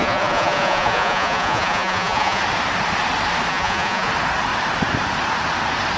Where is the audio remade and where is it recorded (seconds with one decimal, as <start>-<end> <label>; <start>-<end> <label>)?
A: 0.0-2.4 remade; 2.4-3.5 recorded; 3.5-4.1 remade; 4.1-6.0 recorded